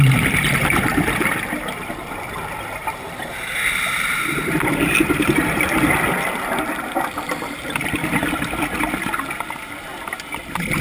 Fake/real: fake